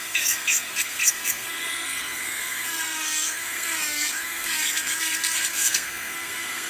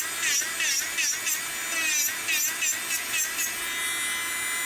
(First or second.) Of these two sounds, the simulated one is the first